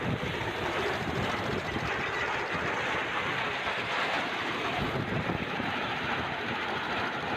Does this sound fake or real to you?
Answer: fake